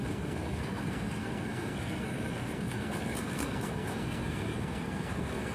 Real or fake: fake